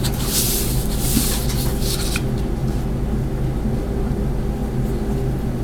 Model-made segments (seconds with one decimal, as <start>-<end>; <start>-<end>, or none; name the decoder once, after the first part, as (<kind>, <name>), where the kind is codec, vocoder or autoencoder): none